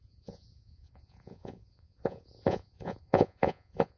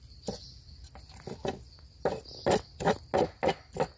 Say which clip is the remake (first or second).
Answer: first